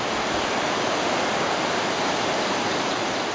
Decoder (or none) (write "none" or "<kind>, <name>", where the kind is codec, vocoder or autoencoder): none